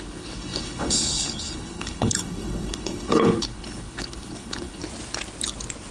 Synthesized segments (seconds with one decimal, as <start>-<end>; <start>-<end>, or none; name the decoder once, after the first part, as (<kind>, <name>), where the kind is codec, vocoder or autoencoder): 0.0-4.8 (codec, HILCodec)